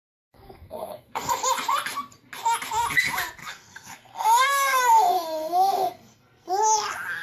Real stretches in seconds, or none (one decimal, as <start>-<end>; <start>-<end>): 1.3-3.4; 6.5-7.2